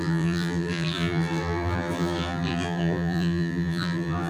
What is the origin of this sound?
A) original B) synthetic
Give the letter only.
B